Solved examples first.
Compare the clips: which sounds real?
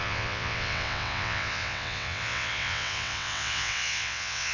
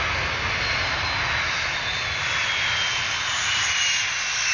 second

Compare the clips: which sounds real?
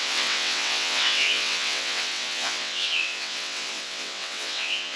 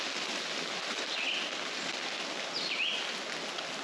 second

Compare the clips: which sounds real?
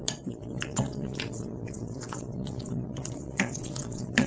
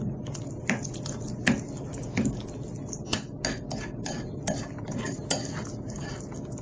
second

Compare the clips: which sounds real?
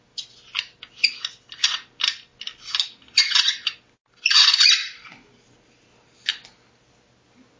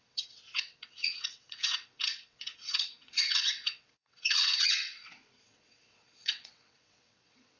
first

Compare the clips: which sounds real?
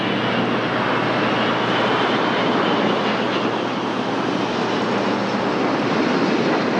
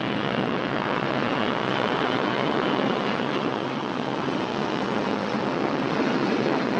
first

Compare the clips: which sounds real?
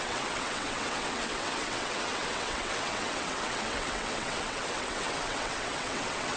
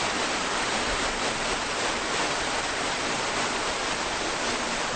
second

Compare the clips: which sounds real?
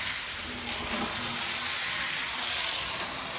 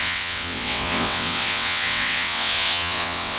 first